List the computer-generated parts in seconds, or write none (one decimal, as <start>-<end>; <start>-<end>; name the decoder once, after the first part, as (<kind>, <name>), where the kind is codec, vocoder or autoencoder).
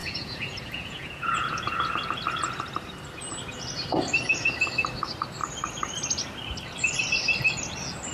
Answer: 0.0-1.7 (vocoder, Vocos)